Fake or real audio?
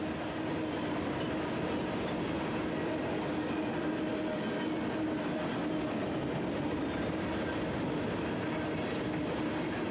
real